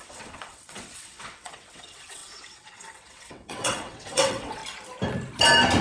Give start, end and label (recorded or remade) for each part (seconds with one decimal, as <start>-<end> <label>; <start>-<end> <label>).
0.0-4.6 remade; 4.6-5.8 recorded